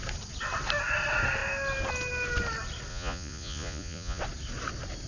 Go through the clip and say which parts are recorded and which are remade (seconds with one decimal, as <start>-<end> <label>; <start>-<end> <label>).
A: 0.0-2.9 recorded; 2.9-4.2 remade; 4.2-5.1 recorded